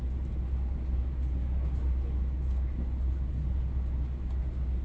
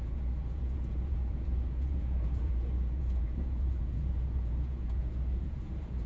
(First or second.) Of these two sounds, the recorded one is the first